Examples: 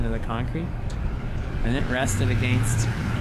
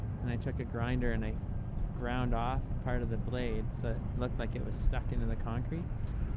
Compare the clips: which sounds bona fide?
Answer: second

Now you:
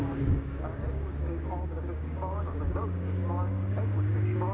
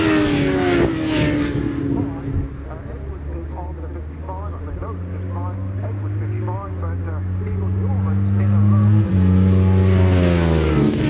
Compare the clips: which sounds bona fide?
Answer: second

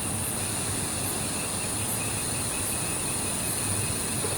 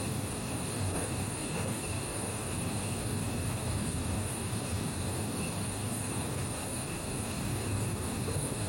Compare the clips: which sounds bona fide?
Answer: first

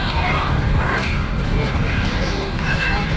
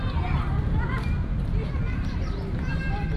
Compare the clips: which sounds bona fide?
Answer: second